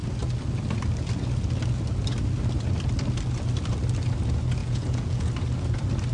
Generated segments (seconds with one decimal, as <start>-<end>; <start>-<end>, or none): 4.6-5.3